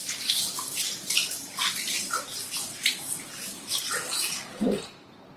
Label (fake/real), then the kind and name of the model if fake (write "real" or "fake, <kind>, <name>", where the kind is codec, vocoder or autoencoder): real